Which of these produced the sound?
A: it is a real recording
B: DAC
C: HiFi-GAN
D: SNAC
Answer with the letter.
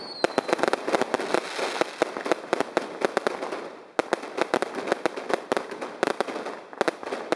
A